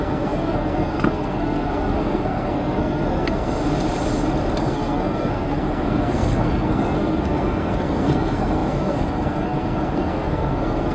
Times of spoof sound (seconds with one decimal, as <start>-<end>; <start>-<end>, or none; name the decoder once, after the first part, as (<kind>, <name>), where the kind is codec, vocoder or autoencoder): 0.0-3.6 (codec, SNAC); 4.6-10.9